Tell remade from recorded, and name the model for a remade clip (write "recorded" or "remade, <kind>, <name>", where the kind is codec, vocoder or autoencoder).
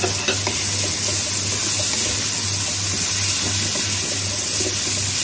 recorded